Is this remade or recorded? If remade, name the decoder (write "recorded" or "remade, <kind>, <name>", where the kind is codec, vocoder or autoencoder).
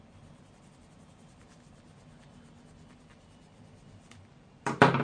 remade, vocoder, BigVGAN v2